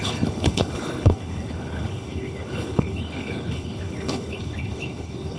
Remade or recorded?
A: remade